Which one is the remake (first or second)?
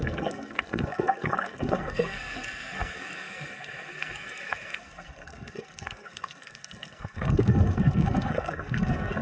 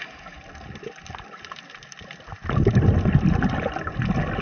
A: first